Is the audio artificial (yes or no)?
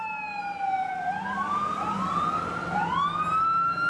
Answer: no